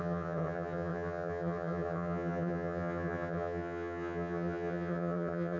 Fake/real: fake